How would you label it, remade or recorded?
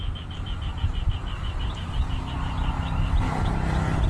recorded